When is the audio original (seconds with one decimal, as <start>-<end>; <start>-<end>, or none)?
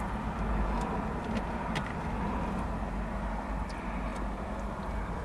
0.0-5.2